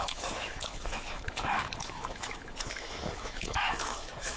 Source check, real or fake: fake